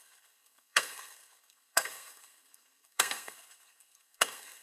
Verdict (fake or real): fake